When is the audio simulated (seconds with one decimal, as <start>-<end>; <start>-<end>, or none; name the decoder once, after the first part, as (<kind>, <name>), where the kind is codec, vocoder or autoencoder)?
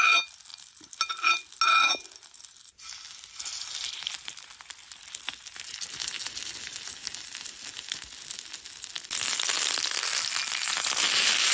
none